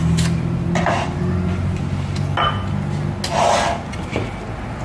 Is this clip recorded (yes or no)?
yes